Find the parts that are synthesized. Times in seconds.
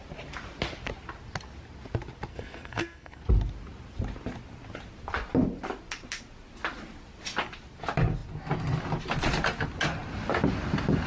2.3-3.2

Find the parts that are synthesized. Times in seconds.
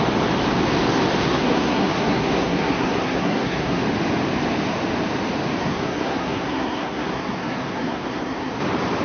1.2-3.8; 5.6-8.5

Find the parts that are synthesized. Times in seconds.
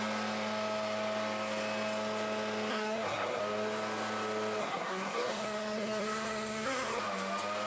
2.7-3.4; 4.6-7.0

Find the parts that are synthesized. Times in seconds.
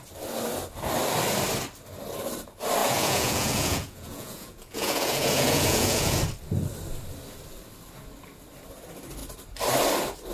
2.8-6.2